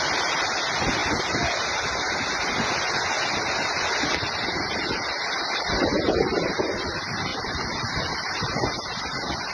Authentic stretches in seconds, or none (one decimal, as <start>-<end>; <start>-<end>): 0.0-9.5